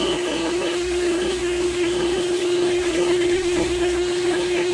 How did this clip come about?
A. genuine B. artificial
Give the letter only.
B